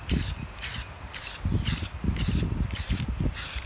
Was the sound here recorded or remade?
recorded